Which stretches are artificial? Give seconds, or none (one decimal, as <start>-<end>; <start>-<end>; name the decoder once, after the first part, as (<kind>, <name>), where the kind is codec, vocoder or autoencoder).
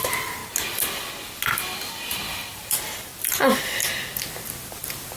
0.0-0.4 (vocoder, BigVGAN v2); 2.5-3.1; 4.2-5.2